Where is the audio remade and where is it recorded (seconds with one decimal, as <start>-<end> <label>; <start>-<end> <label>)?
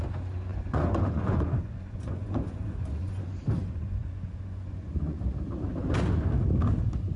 0.0-0.5 recorded; 0.5-3.2 remade; 3.2-3.6 recorded; 3.6-5.2 remade; 5.2-7.2 recorded